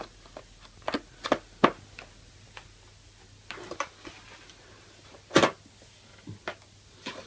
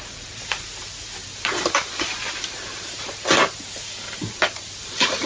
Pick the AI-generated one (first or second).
second